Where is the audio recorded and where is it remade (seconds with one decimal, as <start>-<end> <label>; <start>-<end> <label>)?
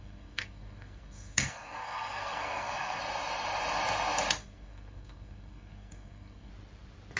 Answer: 0.0-3.0 remade; 3.0-4.4 recorded; 4.4-6.5 remade; 6.5-7.2 recorded